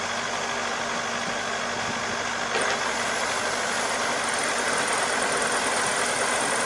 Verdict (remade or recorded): recorded